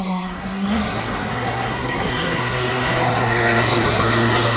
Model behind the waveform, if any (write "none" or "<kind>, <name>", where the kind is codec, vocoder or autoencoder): codec, SNAC